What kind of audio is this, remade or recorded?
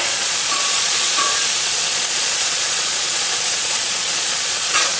remade